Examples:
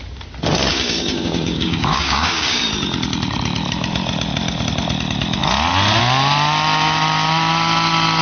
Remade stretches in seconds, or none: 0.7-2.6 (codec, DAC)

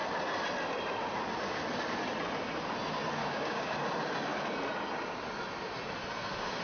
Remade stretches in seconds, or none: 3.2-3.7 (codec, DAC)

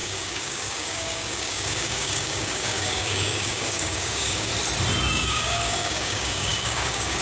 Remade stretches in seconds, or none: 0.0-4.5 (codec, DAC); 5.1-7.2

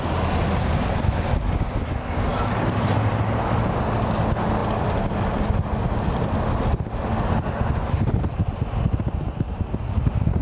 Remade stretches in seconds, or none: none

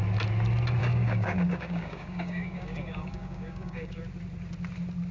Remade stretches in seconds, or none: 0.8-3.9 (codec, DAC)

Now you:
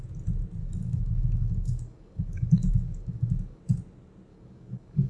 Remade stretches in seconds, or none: 0.6-3.6 (codec, DAC); 4.3-5.1

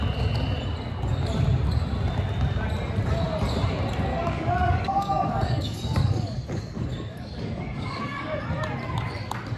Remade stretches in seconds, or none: 4.1-8.4 (codec, DAC)

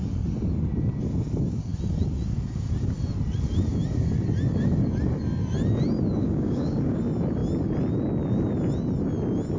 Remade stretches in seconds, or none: 6.2-7.0 (codec, DAC)